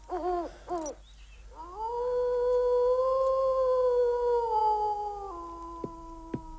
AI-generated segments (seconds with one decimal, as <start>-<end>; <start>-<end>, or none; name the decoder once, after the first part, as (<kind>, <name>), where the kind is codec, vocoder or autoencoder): none